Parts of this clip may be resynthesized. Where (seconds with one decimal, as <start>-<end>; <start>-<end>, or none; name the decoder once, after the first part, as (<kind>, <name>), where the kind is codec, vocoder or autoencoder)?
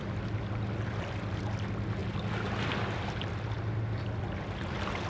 none